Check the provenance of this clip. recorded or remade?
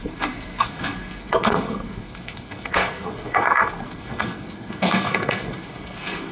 remade